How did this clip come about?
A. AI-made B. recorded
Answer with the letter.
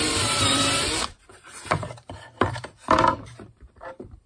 A